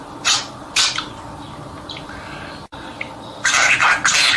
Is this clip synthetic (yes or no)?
yes